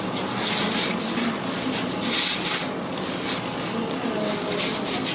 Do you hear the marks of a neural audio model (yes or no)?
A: no